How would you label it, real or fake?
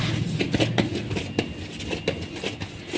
real